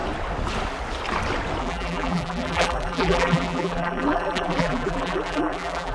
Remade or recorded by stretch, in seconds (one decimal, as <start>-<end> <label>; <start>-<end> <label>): 0.0-1.6 recorded; 1.6-5.9 remade